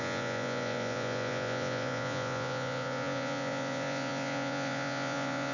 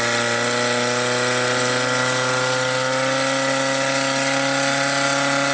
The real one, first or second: second